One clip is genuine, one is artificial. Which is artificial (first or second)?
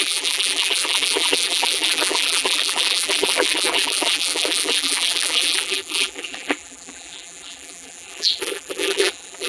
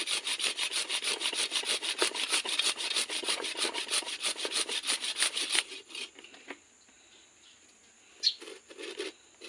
first